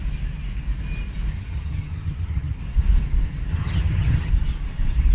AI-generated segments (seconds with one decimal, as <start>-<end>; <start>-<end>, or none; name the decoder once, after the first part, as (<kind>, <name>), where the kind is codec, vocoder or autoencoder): 1.3-2.6 (vocoder, HiFi-GAN); 3.5-4.3